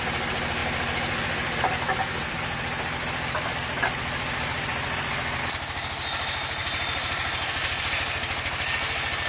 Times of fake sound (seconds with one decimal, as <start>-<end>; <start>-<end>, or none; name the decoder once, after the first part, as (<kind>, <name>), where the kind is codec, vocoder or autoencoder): 0.6-5.4 (vocoder, BigVGAN v2); 6.6-7.8